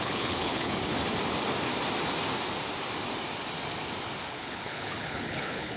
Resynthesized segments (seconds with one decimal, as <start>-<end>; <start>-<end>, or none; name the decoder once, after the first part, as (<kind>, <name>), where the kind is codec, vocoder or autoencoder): 0.0-0.8 (codec, HILCodec); 4.3-5.8